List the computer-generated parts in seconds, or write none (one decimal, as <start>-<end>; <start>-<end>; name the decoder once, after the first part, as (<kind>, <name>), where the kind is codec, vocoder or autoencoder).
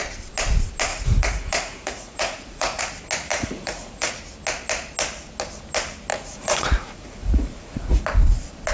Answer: 0.9-2.8 (vocoder, Vocos); 3.3-4.1; 6.1-8.0